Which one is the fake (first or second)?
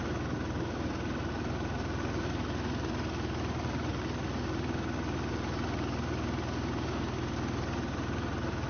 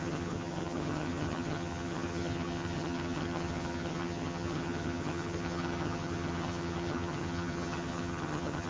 second